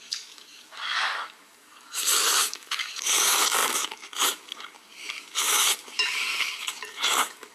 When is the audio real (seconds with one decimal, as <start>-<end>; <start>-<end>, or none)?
none